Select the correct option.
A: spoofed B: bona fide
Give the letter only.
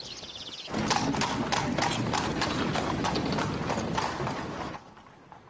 B